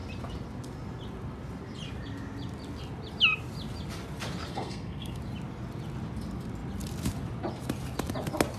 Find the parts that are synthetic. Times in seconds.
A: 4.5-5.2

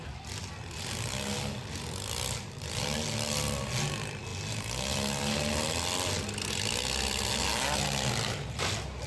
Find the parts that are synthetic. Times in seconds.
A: none